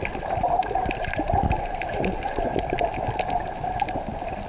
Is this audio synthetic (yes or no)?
no